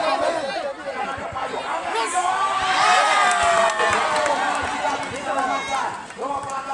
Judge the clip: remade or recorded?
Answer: recorded